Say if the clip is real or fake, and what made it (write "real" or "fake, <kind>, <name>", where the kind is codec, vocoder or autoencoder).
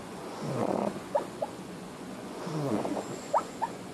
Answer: fake, vocoder, Vocos